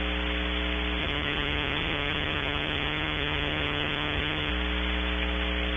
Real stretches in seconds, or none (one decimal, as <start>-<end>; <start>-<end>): 0.0-1.0; 4.5-5.8